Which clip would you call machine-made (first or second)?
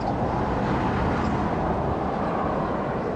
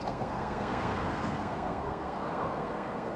second